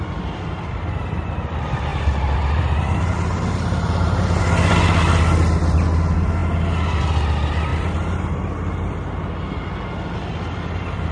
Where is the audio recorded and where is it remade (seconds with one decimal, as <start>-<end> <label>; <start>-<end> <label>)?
0.0-1.9 recorded; 1.9-4.4 remade; 4.4-11.1 recorded